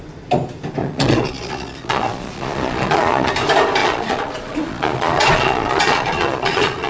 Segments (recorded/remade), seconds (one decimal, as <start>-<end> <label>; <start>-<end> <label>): 0.0-0.8 recorded; 0.8-3.3 remade; 3.3-3.8 recorded; 3.8-6.9 remade